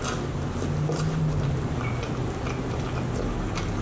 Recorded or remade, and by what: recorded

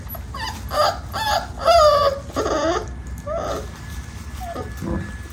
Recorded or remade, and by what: recorded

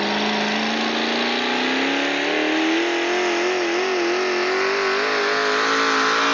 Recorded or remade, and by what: recorded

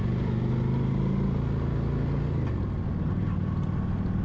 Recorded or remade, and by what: recorded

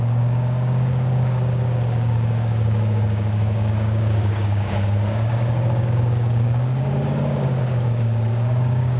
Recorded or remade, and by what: remade, codec, DAC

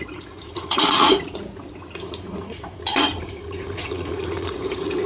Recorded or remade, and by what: remade, vocoder, Vocos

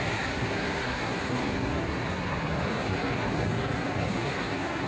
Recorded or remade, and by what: remade, codec, SNAC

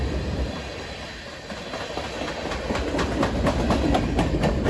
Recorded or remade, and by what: recorded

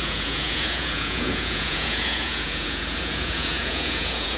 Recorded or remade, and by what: remade, vocoder, Vocos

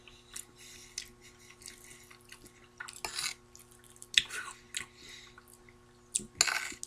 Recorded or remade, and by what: recorded